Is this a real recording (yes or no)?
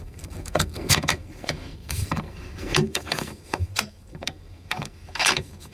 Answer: no